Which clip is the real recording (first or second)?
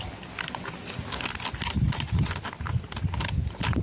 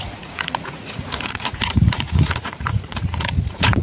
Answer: first